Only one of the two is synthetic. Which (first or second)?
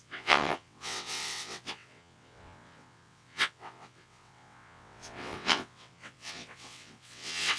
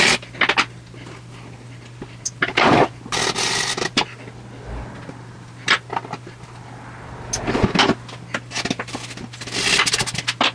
first